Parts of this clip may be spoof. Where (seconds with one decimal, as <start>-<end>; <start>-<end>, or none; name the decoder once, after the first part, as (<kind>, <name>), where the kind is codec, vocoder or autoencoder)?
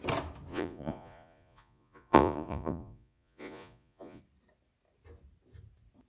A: 0.5-4.2 (vocoder, Vocos)